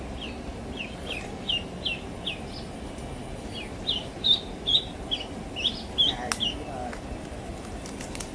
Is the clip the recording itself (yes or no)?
yes